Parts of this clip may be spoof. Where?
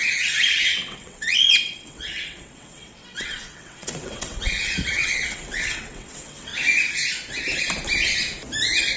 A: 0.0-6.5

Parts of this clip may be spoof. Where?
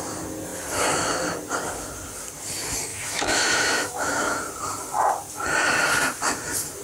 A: 2.9-4.4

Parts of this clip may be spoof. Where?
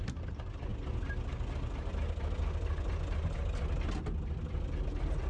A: none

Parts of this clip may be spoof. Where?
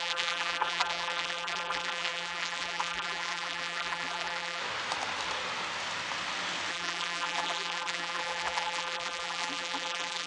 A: 0.0-4.6; 6.7-10.3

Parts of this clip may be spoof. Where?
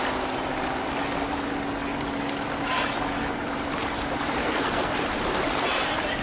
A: 4.4-4.9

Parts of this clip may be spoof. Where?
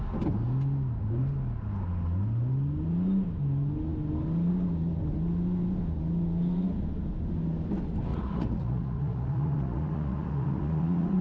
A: 8.1-11.2